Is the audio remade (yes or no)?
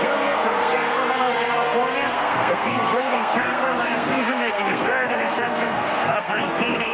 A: yes